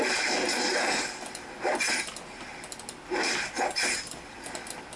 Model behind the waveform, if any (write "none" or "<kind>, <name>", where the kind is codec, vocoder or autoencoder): none